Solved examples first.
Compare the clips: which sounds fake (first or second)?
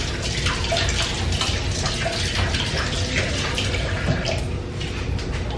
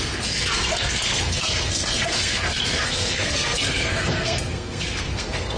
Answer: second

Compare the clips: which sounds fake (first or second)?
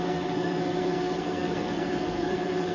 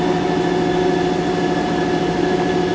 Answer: first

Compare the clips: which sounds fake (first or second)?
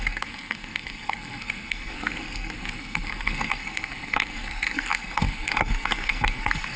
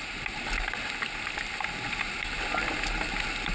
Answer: first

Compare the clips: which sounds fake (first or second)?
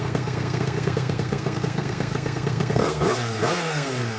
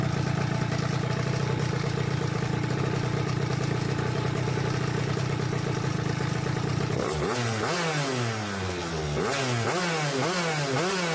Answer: first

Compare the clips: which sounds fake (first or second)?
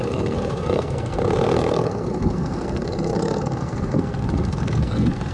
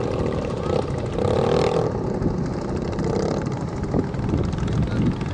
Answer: first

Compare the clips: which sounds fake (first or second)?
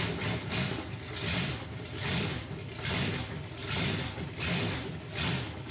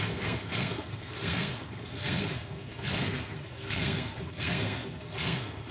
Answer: second